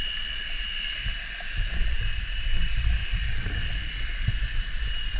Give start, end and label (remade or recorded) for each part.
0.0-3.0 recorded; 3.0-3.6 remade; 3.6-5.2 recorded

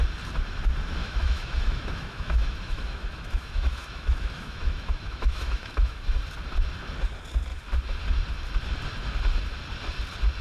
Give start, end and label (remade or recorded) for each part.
0.0-1.0 recorded; 1.0-6.2 remade; 6.2-10.4 recorded